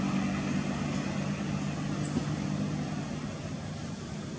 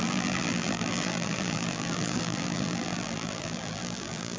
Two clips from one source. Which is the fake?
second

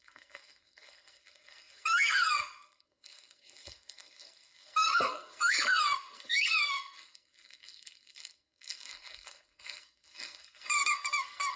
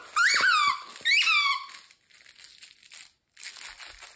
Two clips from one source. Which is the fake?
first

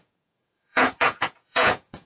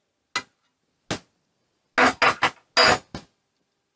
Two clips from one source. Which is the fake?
first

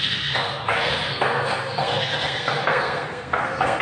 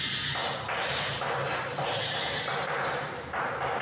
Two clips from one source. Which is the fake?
first